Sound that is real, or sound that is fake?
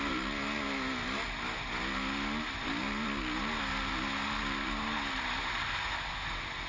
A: real